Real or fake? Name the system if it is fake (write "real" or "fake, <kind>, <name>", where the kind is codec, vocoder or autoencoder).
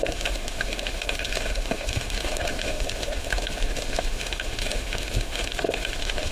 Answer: fake, autoencoder, DAC-VAE